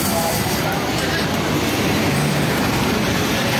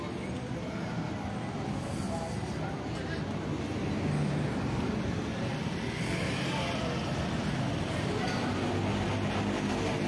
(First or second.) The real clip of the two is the second